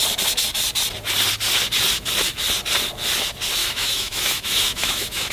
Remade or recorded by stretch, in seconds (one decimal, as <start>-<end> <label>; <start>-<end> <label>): 0.0-3.6 recorded; 3.6-5.3 remade